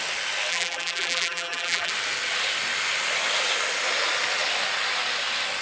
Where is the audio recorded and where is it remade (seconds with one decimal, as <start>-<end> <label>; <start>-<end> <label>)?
0.0-0.5 recorded; 0.5-1.9 remade; 1.9-5.6 recorded